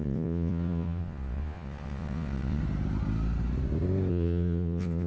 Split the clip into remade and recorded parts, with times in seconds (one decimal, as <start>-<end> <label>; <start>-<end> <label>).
0.0-2.6 remade; 2.6-4.1 recorded; 4.1-5.1 remade